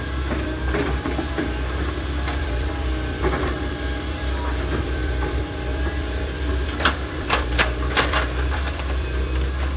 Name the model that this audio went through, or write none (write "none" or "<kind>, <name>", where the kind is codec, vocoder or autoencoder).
vocoder, BigVGAN v2